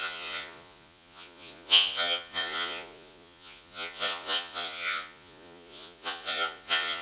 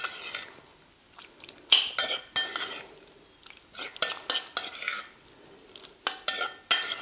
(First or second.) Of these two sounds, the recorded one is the second